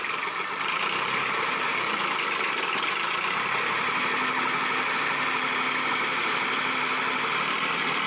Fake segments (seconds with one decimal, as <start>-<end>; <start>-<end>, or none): none